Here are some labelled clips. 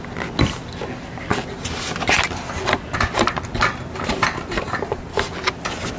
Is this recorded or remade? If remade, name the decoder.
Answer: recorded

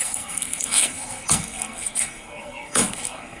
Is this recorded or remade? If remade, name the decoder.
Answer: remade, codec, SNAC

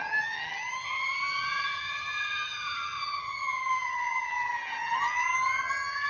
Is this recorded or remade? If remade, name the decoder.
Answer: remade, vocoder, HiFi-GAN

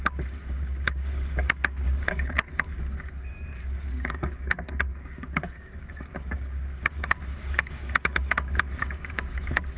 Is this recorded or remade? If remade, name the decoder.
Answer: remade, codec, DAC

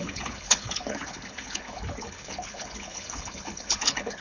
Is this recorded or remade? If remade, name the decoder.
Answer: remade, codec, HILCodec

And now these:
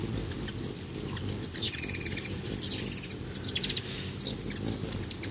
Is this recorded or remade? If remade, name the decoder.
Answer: recorded